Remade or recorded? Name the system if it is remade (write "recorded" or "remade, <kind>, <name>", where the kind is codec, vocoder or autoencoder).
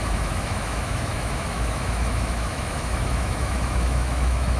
remade, autoencoder, DAC-VAE